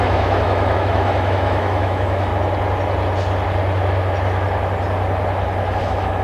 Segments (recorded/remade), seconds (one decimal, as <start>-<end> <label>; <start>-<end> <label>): 0.0-2.3 remade; 2.3-5.8 recorded; 5.8-6.2 remade